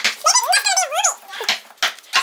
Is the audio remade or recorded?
recorded